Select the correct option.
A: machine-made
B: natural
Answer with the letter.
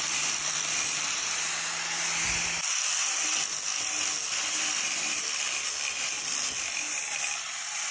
B